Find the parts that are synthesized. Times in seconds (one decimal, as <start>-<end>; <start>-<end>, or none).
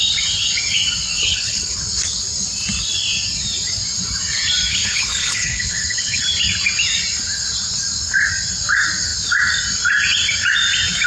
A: 1.1-1.8; 4.7-6.2